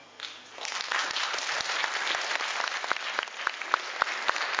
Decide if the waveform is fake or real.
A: real